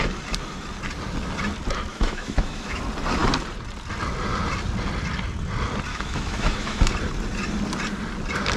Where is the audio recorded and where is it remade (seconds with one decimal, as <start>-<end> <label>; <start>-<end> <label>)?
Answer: 0.0-1.9 recorded; 1.9-2.8 remade; 2.8-5.9 recorded; 5.9-6.9 remade; 6.9-8.6 recorded